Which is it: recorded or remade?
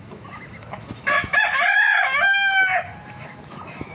remade